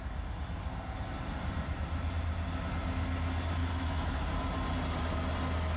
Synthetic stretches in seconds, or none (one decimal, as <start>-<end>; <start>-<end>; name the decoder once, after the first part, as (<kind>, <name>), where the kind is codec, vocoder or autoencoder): 3.6-4.1 (autoencoder, DAC-VAE)